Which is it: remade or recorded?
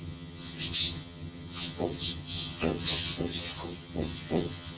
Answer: remade